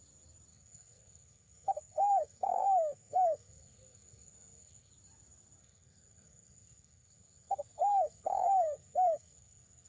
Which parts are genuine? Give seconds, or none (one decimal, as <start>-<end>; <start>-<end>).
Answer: 0.0-0.5; 4.9-5.6